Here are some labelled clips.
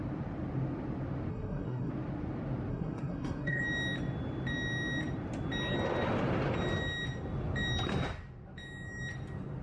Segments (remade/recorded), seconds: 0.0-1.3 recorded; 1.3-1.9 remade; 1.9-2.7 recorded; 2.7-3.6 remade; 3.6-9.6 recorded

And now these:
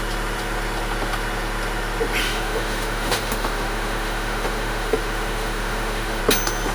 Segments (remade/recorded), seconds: 0.0-2.2 recorded; 2.2-6.2 remade; 6.2-6.7 recorded

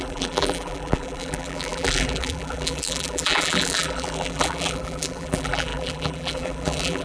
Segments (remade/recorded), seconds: 0.0-7.0 remade

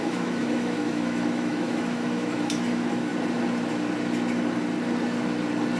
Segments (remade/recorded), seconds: 0.0-3.1 remade; 3.1-5.8 recorded